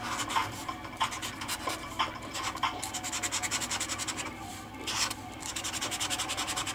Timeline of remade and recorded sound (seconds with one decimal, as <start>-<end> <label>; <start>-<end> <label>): 0.0-4.5 recorded; 4.5-5.8 remade; 5.8-6.7 recorded